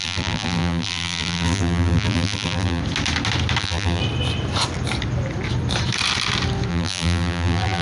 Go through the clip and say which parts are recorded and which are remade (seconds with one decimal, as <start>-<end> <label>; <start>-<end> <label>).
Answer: 0.0-2.8 remade; 2.8-3.6 recorded; 3.6-4.0 remade; 4.0-6.7 recorded; 6.7-7.8 remade